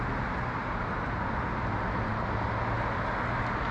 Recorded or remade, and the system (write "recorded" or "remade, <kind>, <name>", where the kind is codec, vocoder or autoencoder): recorded